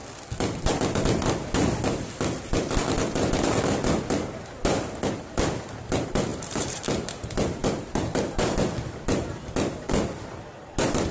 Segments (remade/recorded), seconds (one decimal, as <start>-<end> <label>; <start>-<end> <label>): 0.0-6.3 recorded; 6.3-6.9 remade; 6.9-11.1 recorded